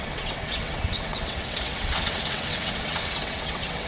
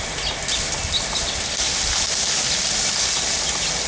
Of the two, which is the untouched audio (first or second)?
second